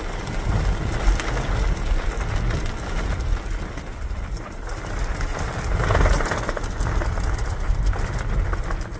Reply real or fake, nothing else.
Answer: real